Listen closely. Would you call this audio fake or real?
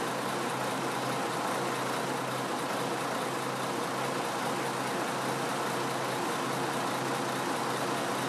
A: real